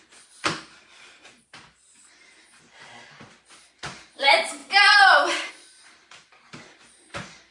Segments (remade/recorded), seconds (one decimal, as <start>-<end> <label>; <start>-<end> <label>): 0.0-7.5 recorded